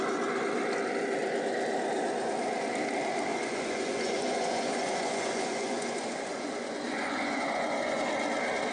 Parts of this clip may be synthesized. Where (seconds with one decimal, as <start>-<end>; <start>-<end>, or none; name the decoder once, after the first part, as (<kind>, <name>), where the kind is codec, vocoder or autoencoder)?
3.3-8.0 (vocoder, Vocos)